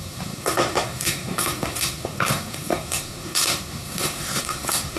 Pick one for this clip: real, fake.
fake